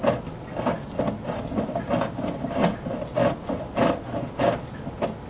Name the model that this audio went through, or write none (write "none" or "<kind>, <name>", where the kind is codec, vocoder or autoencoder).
none